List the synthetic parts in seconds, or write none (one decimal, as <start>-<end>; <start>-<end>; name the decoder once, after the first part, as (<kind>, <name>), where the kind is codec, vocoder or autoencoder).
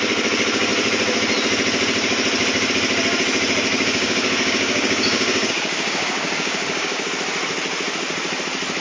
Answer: 3.7-7.1 (codec, DAC)